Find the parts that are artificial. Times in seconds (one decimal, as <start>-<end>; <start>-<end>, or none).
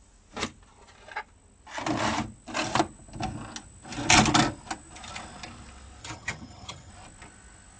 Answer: 6.0-6.9